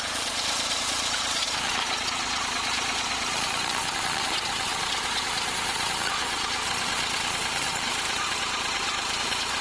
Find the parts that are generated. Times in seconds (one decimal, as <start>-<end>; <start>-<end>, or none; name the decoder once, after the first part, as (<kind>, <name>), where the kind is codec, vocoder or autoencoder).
0.0-9.6 (vocoder, Vocos)

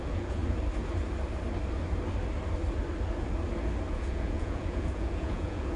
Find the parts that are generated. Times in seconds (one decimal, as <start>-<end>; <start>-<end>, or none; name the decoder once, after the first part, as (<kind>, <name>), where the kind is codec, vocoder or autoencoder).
0.0-0.4 (vocoder, Vocos); 3.9-5.8

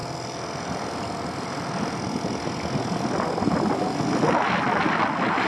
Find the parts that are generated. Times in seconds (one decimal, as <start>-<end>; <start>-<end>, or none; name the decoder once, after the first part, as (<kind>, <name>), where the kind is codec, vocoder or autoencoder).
none